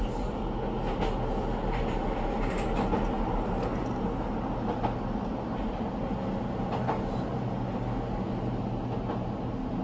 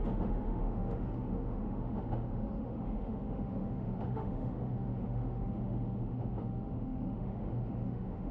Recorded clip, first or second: first